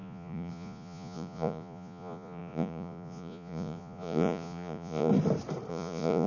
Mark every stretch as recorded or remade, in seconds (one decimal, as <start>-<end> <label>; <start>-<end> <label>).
0.0-5.1 remade; 5.1-5.7 recorded; 5.7-6.3 remade